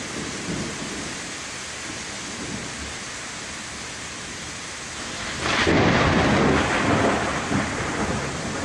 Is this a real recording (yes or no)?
yes